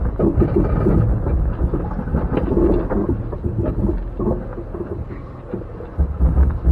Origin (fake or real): real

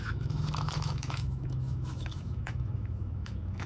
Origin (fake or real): fake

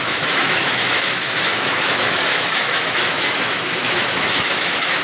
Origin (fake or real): fake